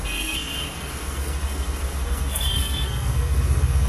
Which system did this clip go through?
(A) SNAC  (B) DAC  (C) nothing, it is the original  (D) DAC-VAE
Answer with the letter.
A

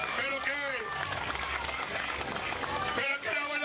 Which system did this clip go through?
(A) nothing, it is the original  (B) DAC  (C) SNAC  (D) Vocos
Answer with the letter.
B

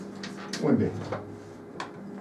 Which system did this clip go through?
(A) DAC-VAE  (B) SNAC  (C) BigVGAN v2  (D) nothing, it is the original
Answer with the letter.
D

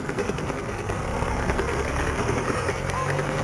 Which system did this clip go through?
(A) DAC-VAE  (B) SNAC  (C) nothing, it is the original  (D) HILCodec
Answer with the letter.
B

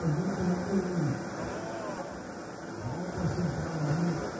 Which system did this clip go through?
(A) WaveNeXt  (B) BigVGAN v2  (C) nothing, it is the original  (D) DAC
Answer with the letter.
C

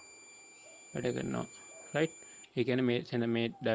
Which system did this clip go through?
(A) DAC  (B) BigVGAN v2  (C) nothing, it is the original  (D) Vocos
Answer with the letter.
C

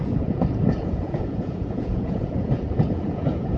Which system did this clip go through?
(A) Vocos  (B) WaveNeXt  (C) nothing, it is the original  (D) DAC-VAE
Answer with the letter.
A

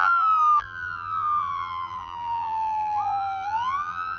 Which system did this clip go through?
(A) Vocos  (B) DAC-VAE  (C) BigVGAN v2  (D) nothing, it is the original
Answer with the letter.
C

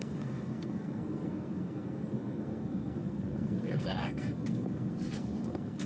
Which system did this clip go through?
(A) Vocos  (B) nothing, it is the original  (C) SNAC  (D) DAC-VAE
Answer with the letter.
C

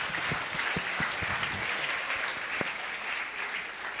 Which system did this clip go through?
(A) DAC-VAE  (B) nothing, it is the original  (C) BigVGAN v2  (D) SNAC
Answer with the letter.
B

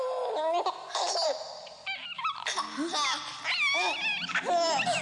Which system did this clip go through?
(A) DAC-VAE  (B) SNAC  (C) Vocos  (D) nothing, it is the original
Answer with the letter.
D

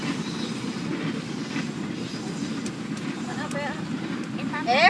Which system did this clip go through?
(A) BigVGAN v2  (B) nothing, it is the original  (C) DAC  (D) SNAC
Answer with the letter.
B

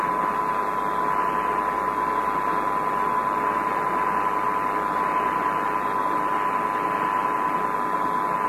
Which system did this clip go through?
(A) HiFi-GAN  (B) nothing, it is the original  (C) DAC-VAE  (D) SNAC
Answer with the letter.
B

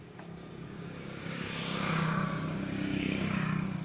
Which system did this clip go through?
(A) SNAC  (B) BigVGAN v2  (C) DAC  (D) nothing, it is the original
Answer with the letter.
C